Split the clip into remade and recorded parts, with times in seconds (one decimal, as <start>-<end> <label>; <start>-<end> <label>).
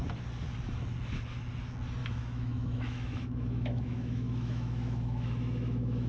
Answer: 0.0-2.0 recorded; 2.0-6.1 remade